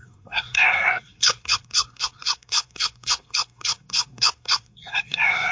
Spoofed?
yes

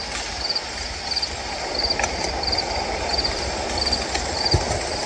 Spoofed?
yes